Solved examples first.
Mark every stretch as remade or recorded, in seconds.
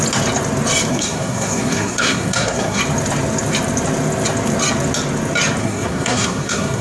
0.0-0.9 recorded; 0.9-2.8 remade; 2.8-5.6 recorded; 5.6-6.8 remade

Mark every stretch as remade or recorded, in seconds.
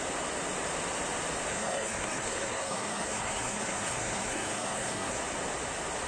0.0-1.5 recorded; 1.5-5.2 remade; 5.2-6.1 recorded